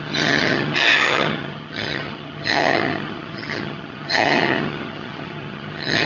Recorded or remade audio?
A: remade